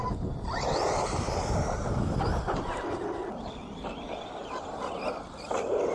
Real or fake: real